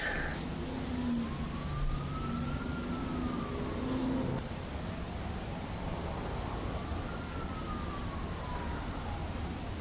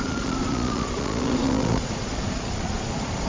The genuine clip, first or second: first